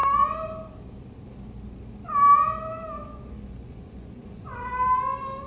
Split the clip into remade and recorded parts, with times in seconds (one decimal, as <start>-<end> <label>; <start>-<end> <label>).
0.0-3.3 recorded; 3.3-4.7 remade; 4.7-5.5 recorded